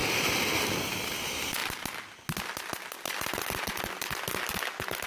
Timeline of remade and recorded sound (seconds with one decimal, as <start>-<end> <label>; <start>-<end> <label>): 0.0-0.8 recorded; 0.8-1.6 remade; 1.6-5.1 recorded